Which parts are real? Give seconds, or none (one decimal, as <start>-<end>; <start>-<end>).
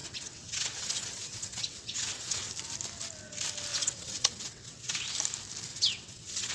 2.5-3.7; 5.0-5.7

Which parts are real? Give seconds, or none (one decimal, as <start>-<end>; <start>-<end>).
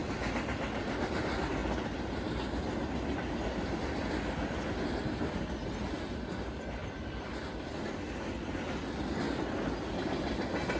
0.0-10.8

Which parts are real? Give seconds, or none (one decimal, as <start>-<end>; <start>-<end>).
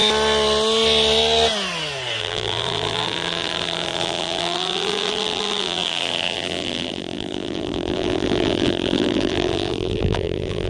0.0-2.2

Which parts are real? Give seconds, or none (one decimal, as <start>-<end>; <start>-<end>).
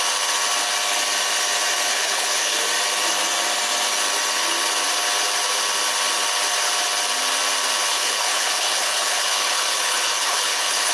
0.0-1.9; 2.6-7.9